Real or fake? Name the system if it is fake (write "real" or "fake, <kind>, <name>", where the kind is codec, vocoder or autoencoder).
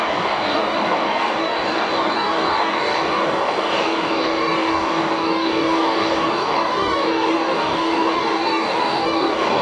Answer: fake, codec, DAC